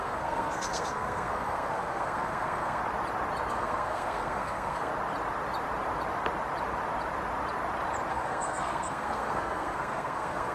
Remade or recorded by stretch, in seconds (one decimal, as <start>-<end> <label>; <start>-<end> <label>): 0.0-2.8 remade; 2.8-3.5 recorded; 3.5-4.9 remade; 4.9-8.1 recorded; 8.1-10.5 remade